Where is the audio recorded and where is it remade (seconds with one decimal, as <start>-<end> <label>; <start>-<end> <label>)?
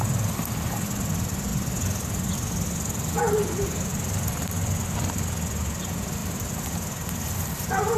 0.0-8.0 recorded